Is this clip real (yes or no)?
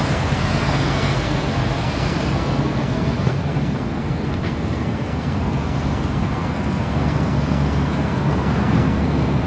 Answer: no